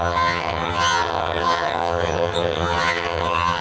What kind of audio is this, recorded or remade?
remade